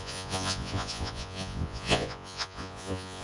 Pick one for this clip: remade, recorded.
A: remade